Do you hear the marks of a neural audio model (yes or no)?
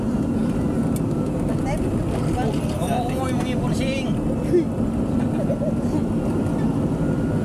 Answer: no